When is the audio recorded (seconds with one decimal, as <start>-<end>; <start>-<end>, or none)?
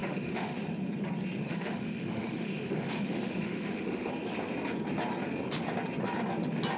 0.6-1.4; 4.1-6.8